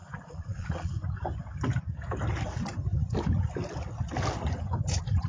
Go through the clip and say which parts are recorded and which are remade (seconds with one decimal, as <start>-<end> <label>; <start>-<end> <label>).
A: 0.0-0.9 remade; 0.9-5.3 recorded